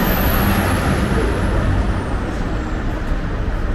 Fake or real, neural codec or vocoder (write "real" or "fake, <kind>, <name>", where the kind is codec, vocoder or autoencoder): real